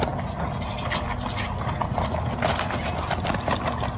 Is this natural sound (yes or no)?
yes